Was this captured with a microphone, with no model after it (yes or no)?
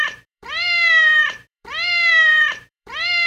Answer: no